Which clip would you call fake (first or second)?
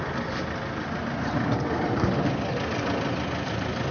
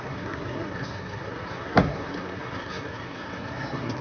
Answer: second